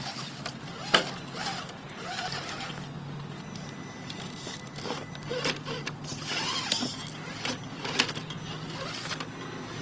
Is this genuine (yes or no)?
yes